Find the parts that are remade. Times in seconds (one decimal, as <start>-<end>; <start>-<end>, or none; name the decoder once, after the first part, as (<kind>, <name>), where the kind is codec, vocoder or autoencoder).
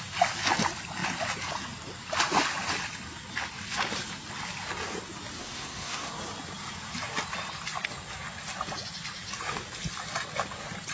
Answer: 5.4-6.1 (codec, SNAC)